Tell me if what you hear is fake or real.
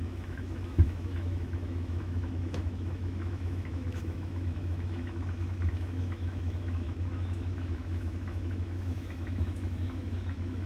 fake